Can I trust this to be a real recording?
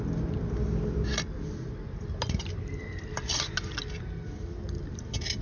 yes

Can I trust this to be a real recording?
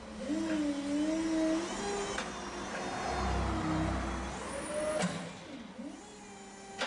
yes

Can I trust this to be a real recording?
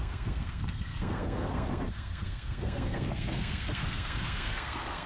no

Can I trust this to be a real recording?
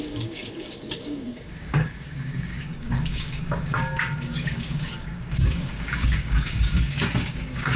no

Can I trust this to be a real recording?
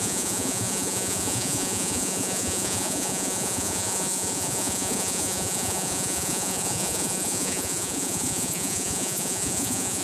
no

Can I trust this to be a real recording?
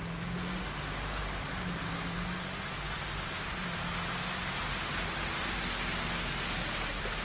yes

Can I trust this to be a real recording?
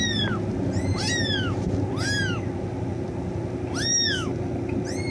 yes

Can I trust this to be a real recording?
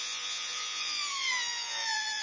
no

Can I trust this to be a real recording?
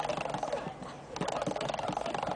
yes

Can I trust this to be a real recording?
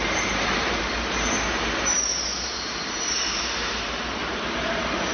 no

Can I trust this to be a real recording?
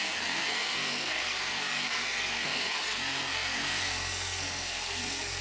no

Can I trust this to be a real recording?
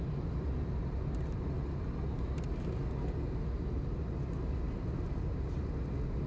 yes